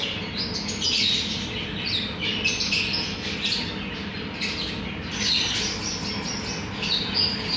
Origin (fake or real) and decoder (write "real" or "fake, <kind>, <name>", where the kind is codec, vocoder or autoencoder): real